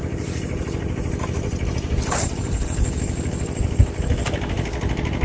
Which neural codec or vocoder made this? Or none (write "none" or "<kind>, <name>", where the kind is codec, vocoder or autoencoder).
none